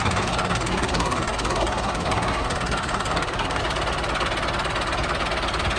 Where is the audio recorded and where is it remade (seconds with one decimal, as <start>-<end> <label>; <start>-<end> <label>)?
0.0-3.6 remade; 3.6-5.8 recorded